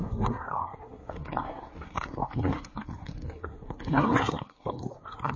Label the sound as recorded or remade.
remade